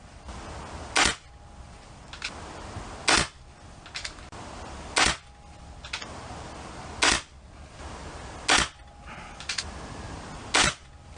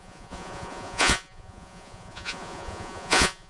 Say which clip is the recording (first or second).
first